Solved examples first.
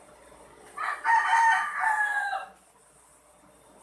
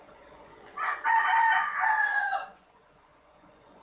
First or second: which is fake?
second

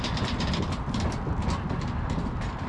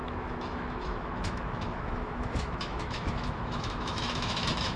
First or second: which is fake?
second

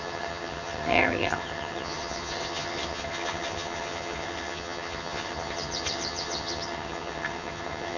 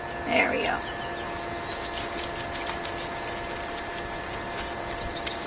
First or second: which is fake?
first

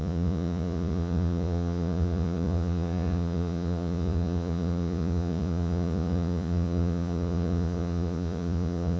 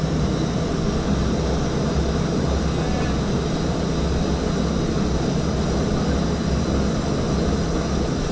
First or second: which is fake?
first